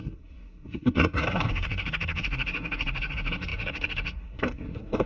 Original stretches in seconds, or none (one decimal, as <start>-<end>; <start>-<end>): none